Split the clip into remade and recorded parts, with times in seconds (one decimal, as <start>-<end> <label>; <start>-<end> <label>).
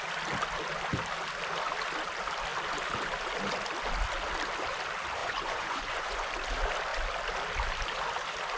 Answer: 0.0-5.2 recorded; 5.2-6.3 remade; 6.3-8.6 recorded